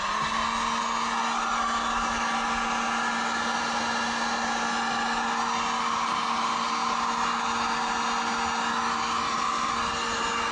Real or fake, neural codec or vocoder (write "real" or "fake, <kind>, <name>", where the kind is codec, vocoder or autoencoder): real